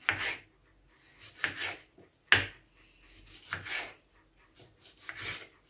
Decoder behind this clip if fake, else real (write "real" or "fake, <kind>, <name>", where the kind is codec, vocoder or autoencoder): real